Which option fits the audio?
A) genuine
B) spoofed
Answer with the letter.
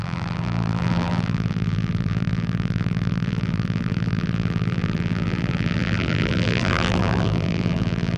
B